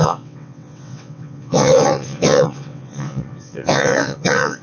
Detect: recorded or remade remade